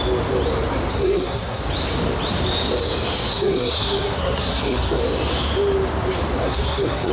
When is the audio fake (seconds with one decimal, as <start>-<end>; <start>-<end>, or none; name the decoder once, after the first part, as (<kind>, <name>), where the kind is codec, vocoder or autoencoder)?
0.9-1.6 (codec, SNAC); 3.3-5.0; 6.4-7.1